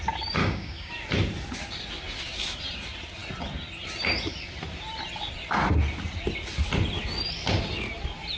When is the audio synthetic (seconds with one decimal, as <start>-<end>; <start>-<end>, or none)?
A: 0.4-0.9